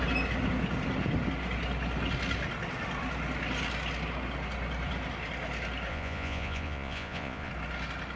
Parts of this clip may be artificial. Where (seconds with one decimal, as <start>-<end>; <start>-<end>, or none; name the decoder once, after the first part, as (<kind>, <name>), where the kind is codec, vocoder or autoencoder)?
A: 5.9-7.5 (vocoder, Vocos)